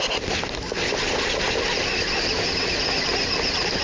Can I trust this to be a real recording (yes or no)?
yes